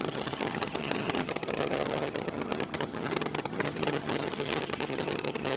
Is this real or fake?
fake